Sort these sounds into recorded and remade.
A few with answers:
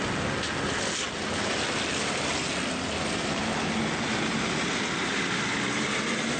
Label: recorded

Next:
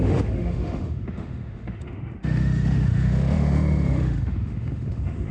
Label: remade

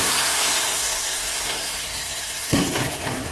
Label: remade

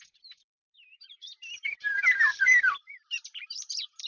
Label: remade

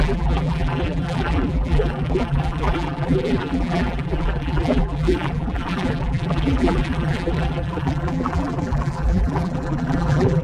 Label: remade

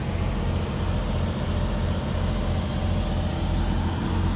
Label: recorded